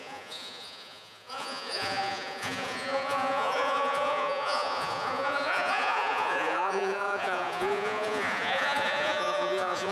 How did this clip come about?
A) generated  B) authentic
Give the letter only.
A